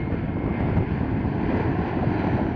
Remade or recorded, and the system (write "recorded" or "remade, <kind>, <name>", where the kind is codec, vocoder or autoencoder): remade, vocoder, BigVGAN v2